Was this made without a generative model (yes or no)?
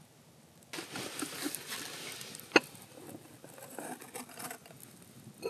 yes